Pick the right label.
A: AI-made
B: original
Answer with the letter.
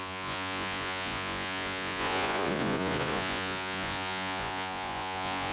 A